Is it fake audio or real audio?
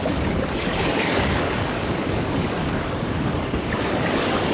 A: fake